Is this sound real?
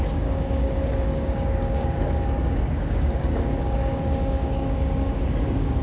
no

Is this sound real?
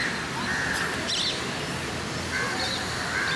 yes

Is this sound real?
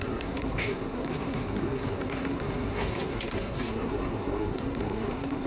no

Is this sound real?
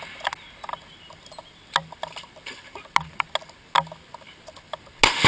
yes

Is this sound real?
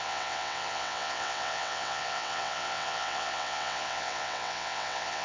no